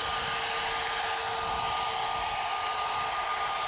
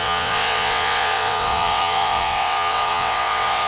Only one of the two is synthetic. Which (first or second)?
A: second